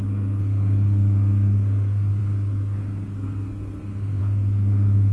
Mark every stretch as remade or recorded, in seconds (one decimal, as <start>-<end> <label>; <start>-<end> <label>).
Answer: 0.0-5.1 remade